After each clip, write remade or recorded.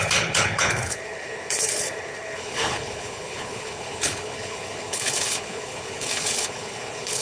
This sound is remade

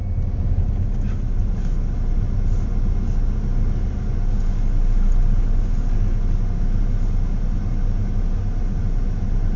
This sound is recorded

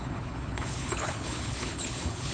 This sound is remade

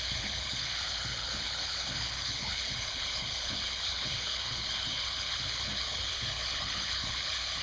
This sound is remade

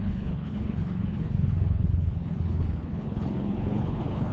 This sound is remade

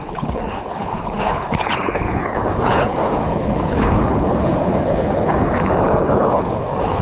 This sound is remade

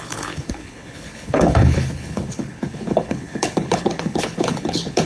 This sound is remade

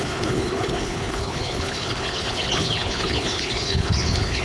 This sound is remade